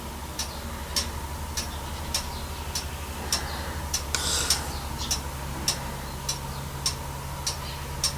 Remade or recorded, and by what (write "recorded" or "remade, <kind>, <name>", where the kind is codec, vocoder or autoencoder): recorded